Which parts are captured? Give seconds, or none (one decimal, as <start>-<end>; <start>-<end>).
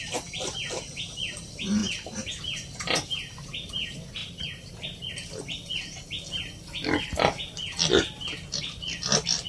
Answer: 0.0-4.2; 5.1-9.5